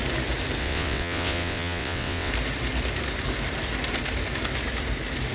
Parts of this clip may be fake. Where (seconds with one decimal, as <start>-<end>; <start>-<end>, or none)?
0.6-2.3